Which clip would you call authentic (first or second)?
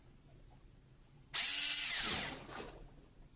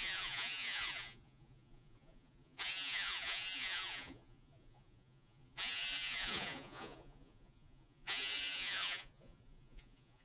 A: first